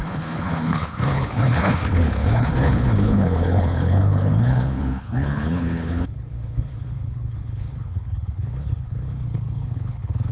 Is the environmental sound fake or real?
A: fake